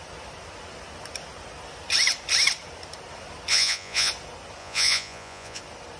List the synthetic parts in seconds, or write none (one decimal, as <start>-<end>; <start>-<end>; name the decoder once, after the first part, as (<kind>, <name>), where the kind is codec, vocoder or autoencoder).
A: 3.5-4.1 (vocoder, Vocos); 4.6-5.6